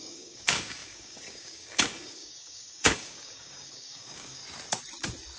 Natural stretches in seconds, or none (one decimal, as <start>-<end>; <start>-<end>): 4.4-5.4